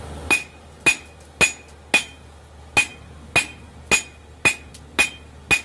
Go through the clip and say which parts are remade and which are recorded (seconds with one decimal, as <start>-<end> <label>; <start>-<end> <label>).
0.0-5.6 recorded